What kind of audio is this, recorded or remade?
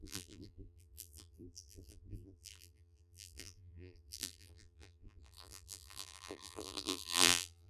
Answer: remade